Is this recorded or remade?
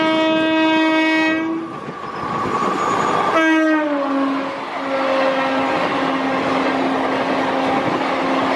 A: recorded